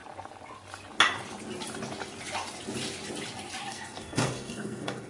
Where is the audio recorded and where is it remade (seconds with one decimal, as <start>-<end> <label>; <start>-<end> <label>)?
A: 0.0-3.7 recorded; 3.7-5.1 remade